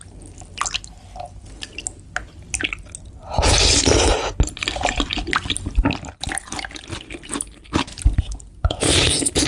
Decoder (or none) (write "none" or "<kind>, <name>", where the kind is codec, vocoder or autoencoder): none